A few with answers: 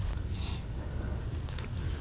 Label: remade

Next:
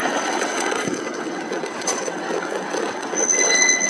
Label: remade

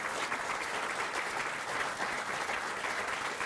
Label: recorded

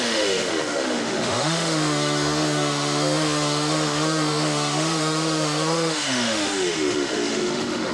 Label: remade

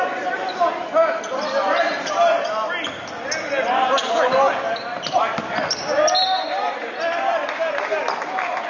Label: recorded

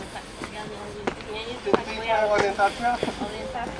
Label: recorded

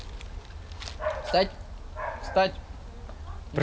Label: recorded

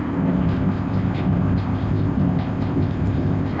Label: remade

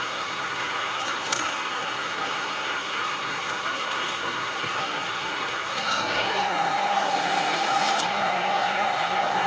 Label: remade